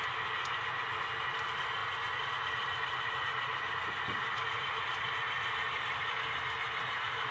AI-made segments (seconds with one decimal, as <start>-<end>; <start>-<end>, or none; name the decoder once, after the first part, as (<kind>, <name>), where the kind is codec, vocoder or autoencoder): none